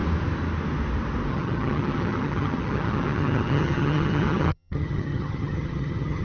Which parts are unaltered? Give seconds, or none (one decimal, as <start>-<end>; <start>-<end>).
0.0-1.3

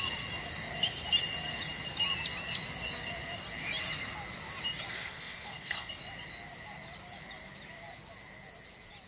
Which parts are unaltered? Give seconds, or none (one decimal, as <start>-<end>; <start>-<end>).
0.0-4.9; 6.0-9.1

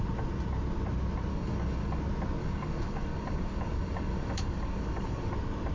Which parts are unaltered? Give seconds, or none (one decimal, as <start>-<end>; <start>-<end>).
0.0-1.3; 2.0-2.4; 5.3-5.7